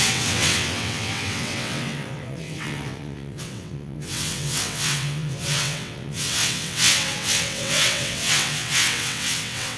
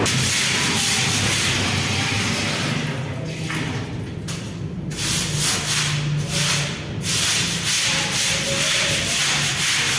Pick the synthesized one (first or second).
first